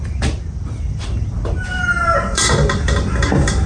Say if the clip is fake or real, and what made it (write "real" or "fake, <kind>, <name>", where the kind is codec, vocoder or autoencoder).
fake, vocoder, BigVGAN v2